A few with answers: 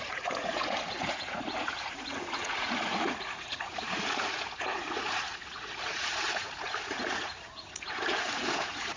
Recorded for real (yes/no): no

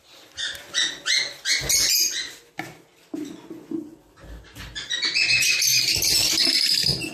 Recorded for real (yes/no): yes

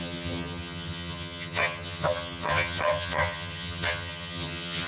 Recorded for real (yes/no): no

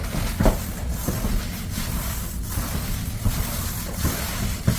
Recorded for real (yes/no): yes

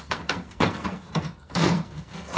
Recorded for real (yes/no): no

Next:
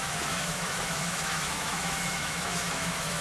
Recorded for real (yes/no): no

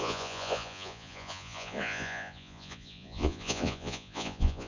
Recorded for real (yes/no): no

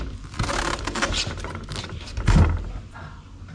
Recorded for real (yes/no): yes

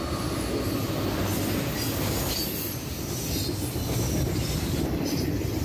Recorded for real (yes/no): yes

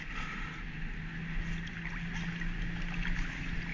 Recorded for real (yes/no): yes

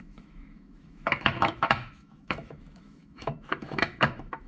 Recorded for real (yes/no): no